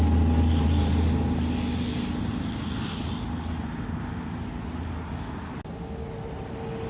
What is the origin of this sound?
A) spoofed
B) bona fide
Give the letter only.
B